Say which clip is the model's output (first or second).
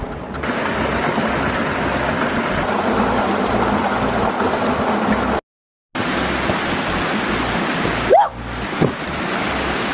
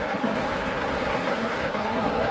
second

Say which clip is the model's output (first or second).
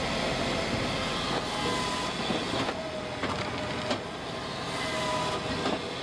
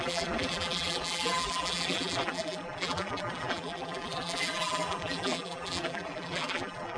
second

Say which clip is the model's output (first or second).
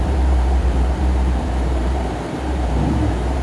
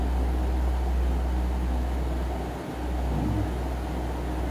first